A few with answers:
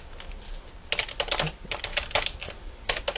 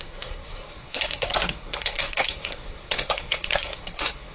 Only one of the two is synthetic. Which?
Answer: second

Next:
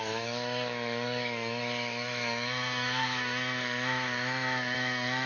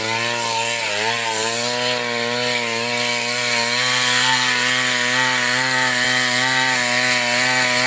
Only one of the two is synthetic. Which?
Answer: first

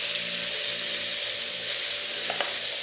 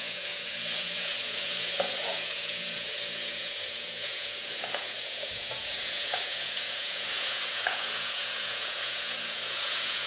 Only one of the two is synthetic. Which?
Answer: second